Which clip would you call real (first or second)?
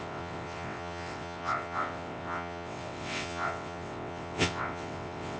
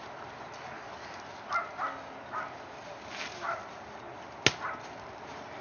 second